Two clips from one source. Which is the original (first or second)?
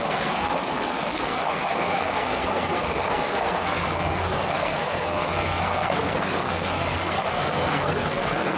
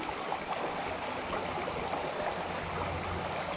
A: second